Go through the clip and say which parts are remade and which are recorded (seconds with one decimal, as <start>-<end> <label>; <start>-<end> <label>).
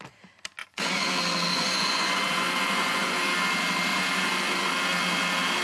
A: 0.0-0.6 recorded; 0.6-1.1 remade; 1.1-1.5 recorded; 1.5-3.2 remade; 3.2-3.9 recorded; 3.9-4.7 remade; 4.7-5.6 recorded